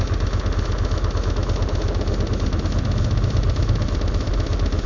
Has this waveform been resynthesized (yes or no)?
no